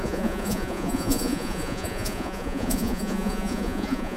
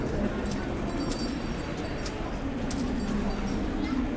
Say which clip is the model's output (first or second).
first